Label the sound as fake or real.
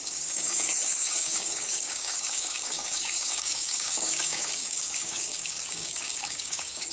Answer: fake